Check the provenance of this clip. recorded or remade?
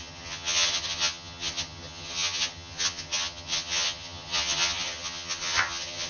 remade